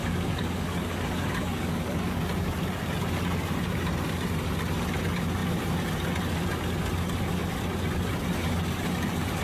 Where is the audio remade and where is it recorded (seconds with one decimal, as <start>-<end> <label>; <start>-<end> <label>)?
0.0-2.2 remade; 2.2-9.4 recorded